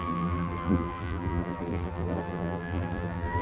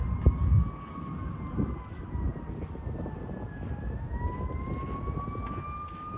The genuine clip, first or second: second